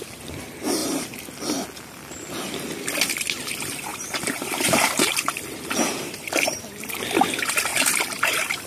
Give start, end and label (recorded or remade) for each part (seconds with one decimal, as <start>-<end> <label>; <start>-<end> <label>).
0.0-3.9 recorded; 3.9-7.0 remade; 7.0-7.7 recorded; 7.7-8.7 remade